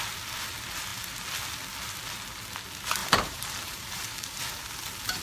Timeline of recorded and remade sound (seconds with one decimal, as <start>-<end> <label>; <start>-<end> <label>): 0.0-3.0 recorded; 3.0-4.4 remade; 4.4-5.2 recorded